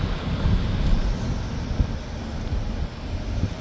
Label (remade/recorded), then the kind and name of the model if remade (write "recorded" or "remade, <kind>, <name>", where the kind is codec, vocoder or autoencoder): recorded